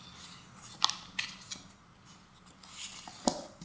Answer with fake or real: real